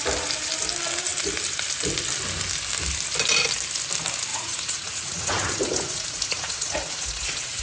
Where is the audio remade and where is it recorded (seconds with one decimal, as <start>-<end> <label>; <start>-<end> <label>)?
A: 0.0-4.3 recorded; 4.3-7.6 remade